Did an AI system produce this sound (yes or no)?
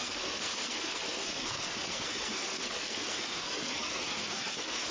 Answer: yes